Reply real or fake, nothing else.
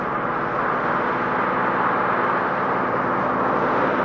real